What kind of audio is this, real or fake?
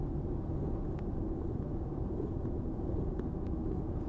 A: fake